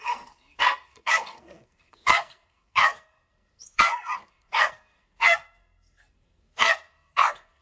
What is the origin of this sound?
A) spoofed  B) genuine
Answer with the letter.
A